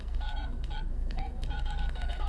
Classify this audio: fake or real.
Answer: fake